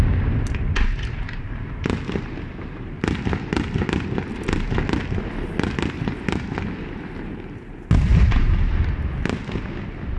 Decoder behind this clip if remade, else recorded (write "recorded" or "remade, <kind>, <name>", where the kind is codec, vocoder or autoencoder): recorded